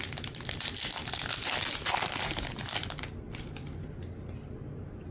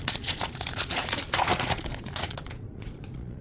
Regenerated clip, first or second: second